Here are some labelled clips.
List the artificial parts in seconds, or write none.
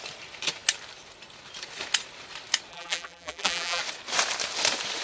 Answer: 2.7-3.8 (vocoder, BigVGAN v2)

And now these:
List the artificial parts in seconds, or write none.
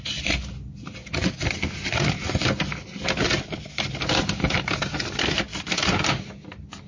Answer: none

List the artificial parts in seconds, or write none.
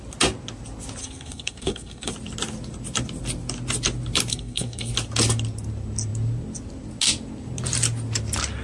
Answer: 1.0-2.1 (codec, SNAC); 4.3-4.9